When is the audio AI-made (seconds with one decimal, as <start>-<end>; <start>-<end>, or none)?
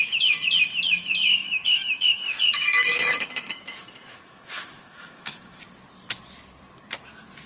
1.4-5.6